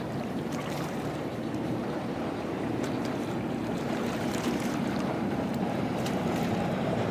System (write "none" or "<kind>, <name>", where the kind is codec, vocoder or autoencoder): vocoder, BigVGAN v2